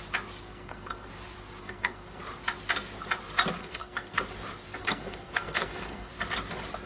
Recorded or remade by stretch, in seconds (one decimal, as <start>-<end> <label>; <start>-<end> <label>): 0.0-0.4 recorded; 0.4-1.1 remade; 1.1-1.6 recorded; 1.6-2.2 remade; 2.2-3.6 recorded; 3.6-4.2 remade; 4.2-4.8 recorded; 4.8-6.1 remade; 6.1-6.9 recorded